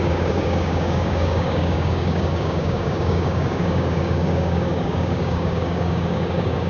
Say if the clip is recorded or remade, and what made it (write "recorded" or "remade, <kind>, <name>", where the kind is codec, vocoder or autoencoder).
remade, codec, DAC